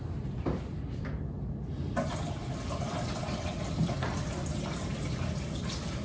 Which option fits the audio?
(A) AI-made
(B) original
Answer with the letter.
B